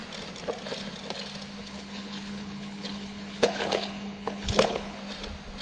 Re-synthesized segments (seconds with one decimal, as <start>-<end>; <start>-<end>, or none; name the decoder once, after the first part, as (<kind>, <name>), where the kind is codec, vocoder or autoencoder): 1.6-5.0 (codec, HILCodec)